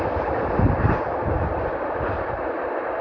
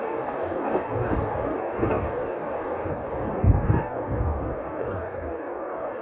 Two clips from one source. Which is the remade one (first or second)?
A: second